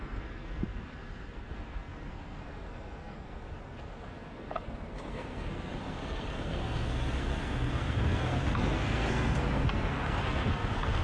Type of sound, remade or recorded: remade